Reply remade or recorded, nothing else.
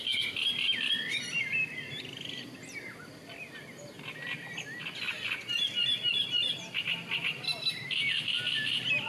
recorded